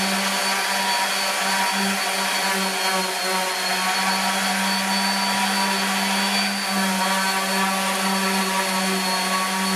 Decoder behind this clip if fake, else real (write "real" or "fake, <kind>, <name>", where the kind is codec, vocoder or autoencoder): real